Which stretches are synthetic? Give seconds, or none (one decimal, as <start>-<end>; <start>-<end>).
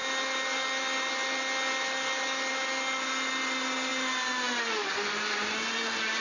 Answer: none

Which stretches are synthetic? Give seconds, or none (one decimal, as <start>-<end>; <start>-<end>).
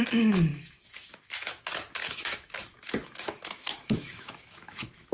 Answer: 0.5-1.6; 2.0-5.1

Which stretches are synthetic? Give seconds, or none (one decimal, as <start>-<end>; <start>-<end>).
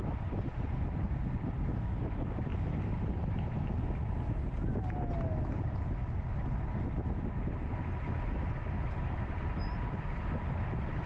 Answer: none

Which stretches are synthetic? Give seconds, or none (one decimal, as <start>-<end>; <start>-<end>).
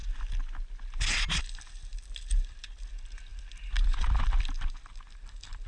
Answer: none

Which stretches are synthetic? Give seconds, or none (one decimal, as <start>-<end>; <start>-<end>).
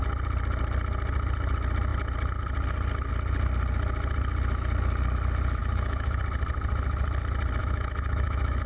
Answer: 5.6-6.2; 7.6-8.7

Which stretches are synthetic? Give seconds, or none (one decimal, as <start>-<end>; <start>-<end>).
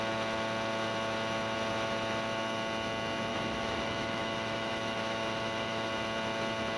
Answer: 3.3-5.9